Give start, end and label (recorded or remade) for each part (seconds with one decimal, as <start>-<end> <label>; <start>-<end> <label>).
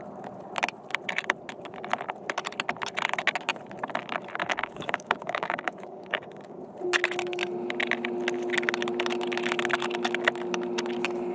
0.0-4.4 recorded; 4.4-6.6 remade; 6.6-11.3 recorded